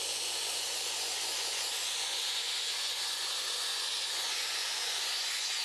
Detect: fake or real fake